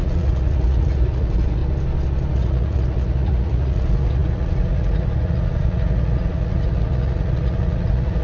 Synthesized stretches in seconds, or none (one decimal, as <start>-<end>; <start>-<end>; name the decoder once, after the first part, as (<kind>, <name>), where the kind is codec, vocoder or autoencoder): 0.0-1.6 (vocoder, Vocos); 2.3-8.2